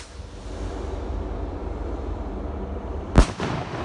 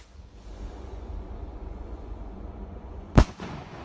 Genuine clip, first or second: first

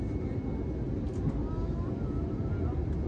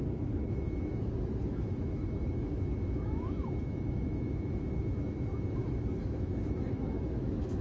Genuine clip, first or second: first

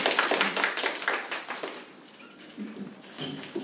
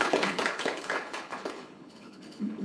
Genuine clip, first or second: first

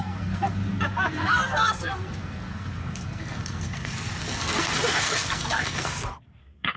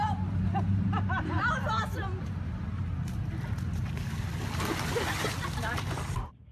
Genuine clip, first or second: second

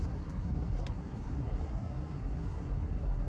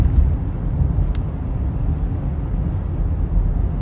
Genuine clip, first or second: second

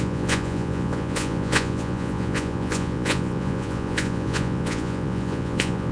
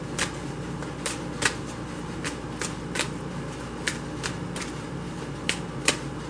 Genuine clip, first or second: second